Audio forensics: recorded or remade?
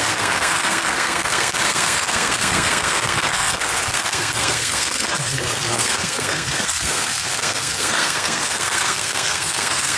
remade